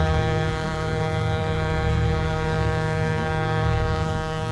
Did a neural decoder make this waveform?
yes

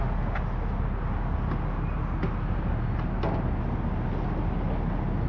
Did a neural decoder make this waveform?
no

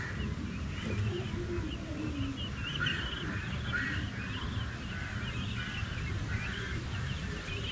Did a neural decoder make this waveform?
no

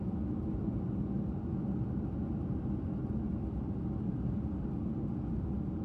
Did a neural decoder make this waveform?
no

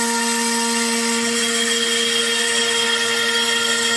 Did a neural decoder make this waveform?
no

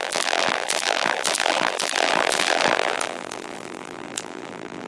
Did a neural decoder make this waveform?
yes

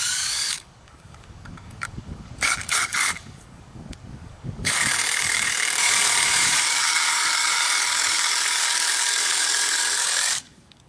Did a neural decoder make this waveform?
yes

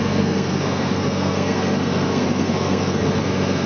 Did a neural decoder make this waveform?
yes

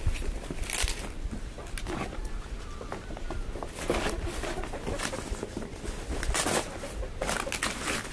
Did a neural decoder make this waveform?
no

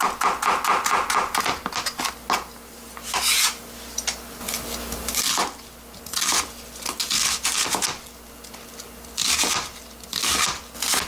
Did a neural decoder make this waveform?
no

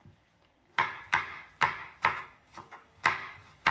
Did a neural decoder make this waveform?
yes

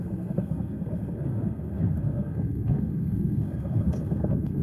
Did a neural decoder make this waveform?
yes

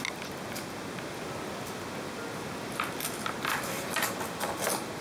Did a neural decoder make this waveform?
no